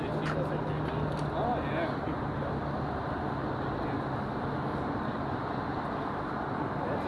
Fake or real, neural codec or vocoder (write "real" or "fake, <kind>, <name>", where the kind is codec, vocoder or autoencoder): real